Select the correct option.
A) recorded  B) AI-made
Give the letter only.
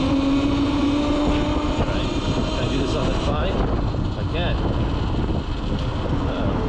A